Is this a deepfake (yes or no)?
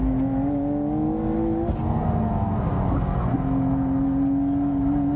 no